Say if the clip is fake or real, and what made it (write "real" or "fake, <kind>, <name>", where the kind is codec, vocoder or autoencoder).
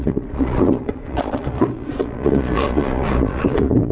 fake, vocoder, Vocos